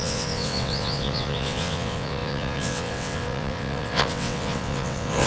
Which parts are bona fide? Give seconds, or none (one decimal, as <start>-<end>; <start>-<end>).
none